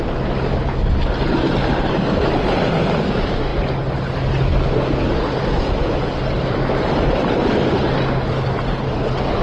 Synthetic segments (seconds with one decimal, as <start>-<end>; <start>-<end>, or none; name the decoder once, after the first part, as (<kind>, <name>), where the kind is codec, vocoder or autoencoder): none